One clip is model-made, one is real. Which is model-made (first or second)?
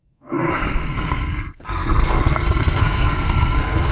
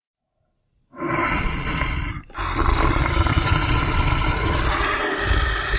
first